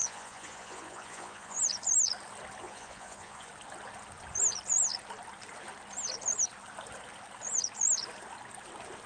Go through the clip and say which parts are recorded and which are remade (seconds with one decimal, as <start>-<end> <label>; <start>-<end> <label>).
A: 0.0-1.6 remade; 1.6-2.6 recorded; 2.6-3.5 remade; 3.5-9.1 recorded